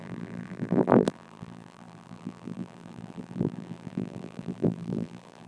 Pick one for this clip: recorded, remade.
remade